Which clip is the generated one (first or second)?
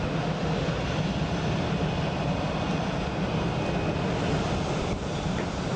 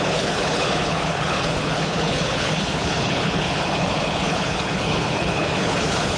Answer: second